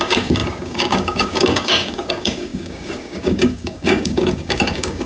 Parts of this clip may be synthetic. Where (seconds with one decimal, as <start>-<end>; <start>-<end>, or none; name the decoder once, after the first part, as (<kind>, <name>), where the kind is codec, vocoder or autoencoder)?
0.0-5.1 (codec, DAC)